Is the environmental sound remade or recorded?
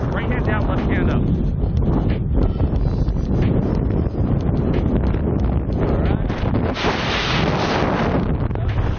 recorded